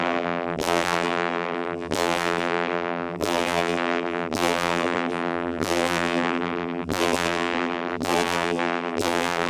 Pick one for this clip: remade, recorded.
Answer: remade